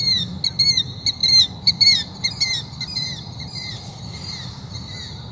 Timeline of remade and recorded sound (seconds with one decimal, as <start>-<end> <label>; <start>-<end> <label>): 0.0-1.2 recorded; 1.2-1.7 remade; 1.7-2.9 recorded; 2.9-3.7 remade; 3.7-5.3 recorded